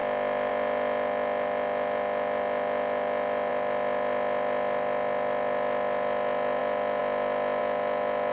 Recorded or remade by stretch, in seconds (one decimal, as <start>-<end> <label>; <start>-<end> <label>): 0.0-8.3 recorded